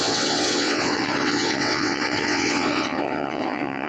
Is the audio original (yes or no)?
no